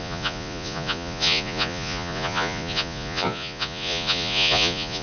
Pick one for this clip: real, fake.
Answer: fake